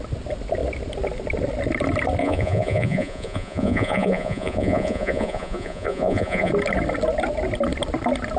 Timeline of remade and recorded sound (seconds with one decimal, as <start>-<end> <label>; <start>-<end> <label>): 0.0-2.2 recorded; 2.2-6.5 remade; 6.5-8.4 recorded